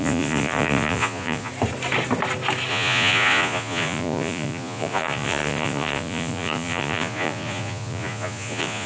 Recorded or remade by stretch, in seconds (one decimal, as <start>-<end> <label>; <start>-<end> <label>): 0.0-1.5 remade; 1.5-2.7 recorded; 2.7-8.9 remade

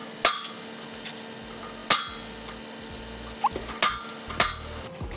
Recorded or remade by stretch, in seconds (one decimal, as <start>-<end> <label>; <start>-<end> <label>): 0.0-5.2 recorded

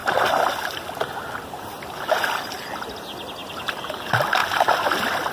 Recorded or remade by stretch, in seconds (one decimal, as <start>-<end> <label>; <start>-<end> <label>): 0.0-2.1 remade; 2.1-4.4 recorded; 4.4-5.3 remade

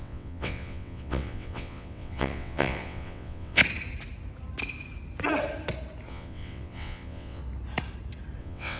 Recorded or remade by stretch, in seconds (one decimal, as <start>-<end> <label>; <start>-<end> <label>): 0.0-3.6 remade; 3.6-6.1 recorded; 6.1-7.4 remade; 7.4-8.4 recorded; 8.4-8.8 remade